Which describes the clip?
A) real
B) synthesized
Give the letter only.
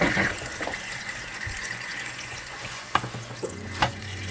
B